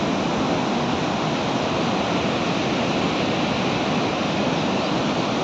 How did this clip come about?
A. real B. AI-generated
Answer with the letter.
A